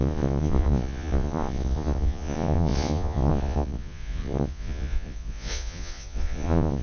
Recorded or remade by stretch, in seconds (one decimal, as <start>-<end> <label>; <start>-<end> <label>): 0.0-6.8 remade